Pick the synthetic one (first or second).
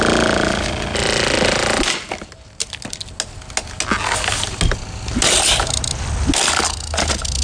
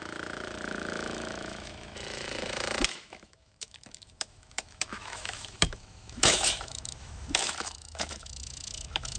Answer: second